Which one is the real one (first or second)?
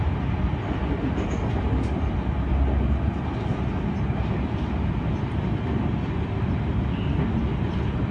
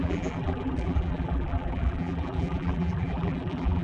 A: first